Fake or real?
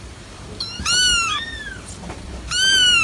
fake